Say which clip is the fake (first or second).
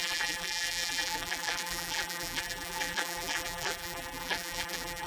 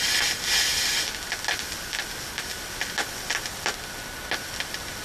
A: first